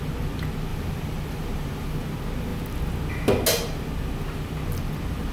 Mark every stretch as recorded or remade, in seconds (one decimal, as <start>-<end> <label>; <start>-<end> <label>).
0.0-0.7 recorded; 0.7-1.9 remade; 1.9-5.3 recorded